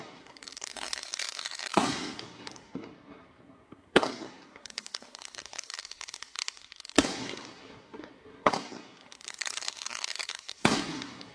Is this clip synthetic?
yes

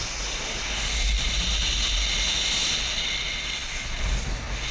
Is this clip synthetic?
no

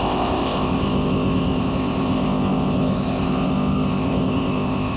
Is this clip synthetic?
yes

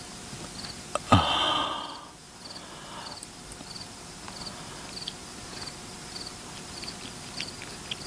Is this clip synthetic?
no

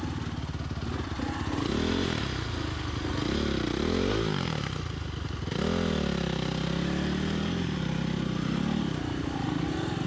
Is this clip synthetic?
no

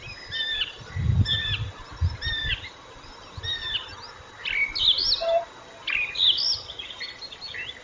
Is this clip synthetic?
no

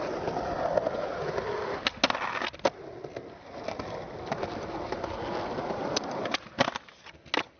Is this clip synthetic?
no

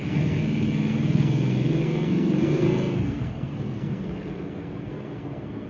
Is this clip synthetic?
yes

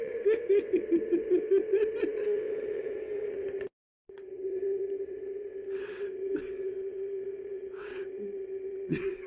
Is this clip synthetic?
yes